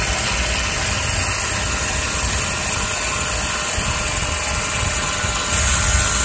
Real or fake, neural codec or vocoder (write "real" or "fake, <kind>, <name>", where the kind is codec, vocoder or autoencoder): real